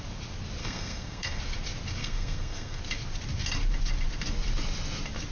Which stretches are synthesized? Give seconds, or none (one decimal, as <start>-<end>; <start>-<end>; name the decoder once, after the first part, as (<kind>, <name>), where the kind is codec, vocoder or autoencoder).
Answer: 0.6-1.4 (codec, SNAC); 2.0-2.8

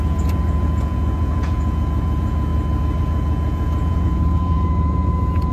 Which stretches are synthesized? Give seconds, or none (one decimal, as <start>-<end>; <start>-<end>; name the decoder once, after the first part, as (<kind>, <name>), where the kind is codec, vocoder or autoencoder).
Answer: 0.0-2.5 (vocoder, Vocos); 3.0-5.5

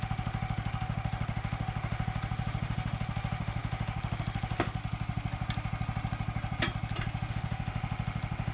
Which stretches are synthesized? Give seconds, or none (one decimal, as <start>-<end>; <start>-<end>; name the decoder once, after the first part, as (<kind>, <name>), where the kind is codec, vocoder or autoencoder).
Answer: 0.0-4.8 (autoencoder, DAC-VAE); 7.3-8.5

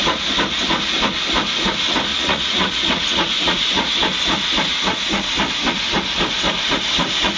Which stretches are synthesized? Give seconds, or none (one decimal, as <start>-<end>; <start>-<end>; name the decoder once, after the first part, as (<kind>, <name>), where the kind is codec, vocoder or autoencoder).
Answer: 2.1-3.9 (vocoder, Vocos)

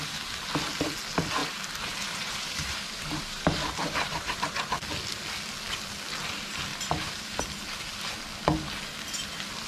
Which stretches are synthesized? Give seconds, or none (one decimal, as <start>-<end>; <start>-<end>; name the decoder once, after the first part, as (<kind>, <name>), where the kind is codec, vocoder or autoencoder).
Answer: 1.4-4.8 (vocoder, BigVGAN v2); 6.7-7.4

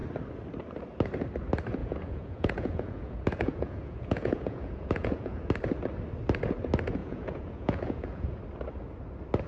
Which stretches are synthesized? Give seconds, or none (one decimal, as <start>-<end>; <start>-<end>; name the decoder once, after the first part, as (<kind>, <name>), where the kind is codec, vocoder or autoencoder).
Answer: 1.8-5.5 (vocoder, Vocos); 7.0-8.4

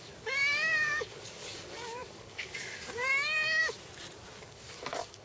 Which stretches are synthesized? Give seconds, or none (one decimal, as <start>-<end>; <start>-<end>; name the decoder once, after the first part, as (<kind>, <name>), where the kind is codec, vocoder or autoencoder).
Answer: 0.0-3.6 (codec, DAC); 4.4-5.2